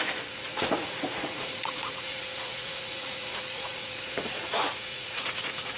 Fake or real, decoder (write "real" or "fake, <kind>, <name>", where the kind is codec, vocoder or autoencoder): fake, vocoder, Vocos